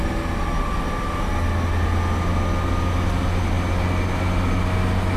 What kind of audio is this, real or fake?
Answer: real